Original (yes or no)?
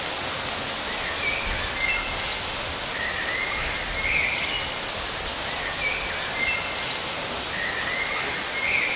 yes